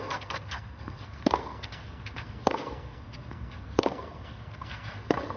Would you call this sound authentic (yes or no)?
no